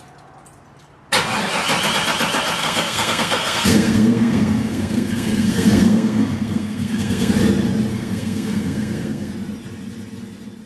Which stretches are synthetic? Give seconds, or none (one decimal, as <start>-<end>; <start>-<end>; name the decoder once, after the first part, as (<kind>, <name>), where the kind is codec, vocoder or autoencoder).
2.6-7.3 (codec, SNAC); 7.9-9.3